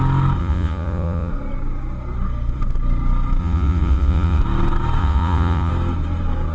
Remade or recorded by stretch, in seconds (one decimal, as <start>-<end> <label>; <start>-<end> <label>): 0.0-0.4 recorded; 0.4-1.3 remade; 1.3-3.4 recorded; 3.4-4.4 remade; 4.4-5.0 recorded; 5.0-5.7 remade; 5.7-6.5 recorded